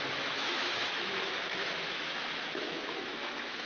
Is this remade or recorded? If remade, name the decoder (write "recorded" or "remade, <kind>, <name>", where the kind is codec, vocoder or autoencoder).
remade, autoencoder, DAC-VAE